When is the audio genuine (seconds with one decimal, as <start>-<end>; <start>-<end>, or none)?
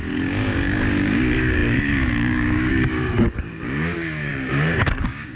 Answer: none